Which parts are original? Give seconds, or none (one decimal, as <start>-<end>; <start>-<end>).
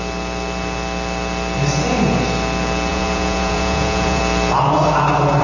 0.0-2.9; 4.2-5.4